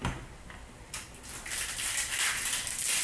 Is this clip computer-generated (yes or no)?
no